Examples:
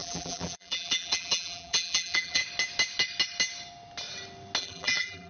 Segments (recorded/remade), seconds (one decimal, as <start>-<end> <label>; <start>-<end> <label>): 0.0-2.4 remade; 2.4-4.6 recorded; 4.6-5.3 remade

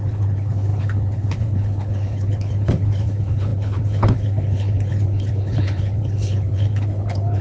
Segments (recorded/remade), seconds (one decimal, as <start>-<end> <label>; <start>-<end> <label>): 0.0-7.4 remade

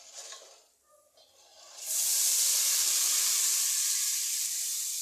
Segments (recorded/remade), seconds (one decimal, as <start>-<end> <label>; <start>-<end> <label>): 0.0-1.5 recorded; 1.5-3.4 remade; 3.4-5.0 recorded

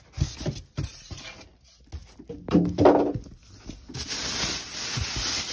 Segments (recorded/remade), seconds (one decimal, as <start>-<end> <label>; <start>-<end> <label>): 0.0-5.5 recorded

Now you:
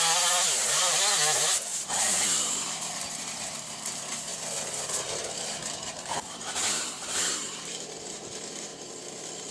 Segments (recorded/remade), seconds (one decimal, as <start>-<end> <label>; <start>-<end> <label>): 0.0-4.3 remade; 4.3-5.2 recorded; 5.2-8.7 remade; 8.7-9.5 recorded

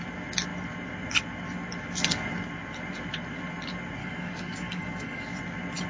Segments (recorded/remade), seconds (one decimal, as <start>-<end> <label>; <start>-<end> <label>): 0.0-4.0 recorded; 4.0-5.3 remade; 5.3-5.9 recorded

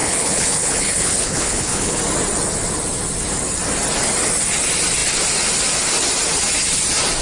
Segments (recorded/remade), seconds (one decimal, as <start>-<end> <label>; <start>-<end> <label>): 0.0-2.0 remade; 2.0-7.2 recorded